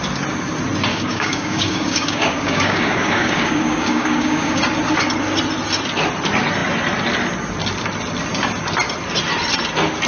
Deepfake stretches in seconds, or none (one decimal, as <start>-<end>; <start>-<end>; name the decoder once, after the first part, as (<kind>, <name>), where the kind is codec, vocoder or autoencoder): 0.9-4.6 (codec, DAC)